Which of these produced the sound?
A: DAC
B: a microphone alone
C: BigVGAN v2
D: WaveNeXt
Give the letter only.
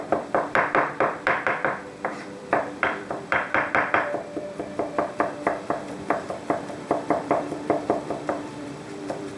C